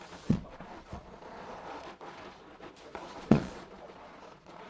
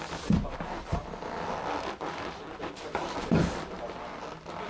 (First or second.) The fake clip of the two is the first